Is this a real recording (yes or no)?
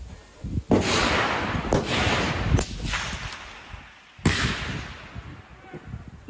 yes